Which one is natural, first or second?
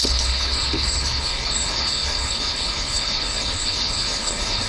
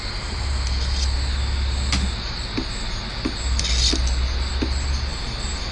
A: second